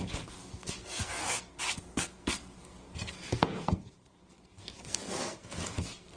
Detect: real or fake fake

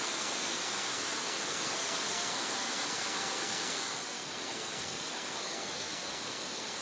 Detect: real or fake fake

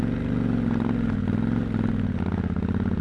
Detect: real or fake real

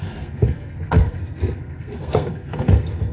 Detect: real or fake fake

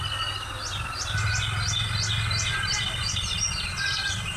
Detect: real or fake real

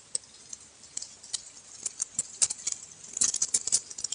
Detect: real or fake real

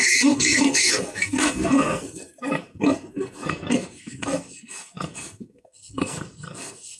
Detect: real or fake fake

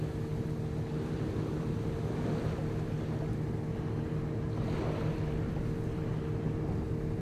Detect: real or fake real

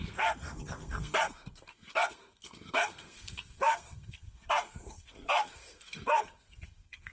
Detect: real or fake fake